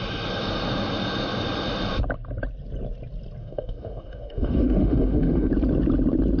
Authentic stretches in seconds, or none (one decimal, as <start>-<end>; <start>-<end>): 0.0-3.4; 5.5-6.4